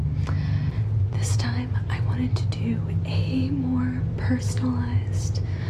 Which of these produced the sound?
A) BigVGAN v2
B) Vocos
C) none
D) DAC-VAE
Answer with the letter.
C